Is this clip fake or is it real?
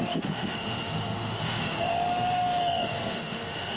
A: fake